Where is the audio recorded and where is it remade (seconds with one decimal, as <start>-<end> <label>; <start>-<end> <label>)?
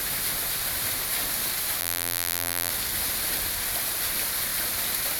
0.0-1.8 recorded; 1.8-2.7 remade; 2.7-5.2 recorded